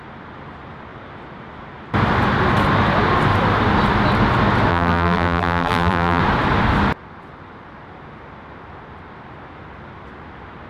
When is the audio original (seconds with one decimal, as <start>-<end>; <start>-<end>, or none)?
0.0-4.7; 6.2-10.7